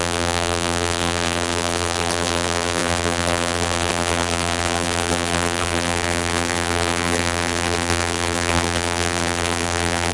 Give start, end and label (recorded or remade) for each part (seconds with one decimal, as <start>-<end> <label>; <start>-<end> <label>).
0.0-10.1 remade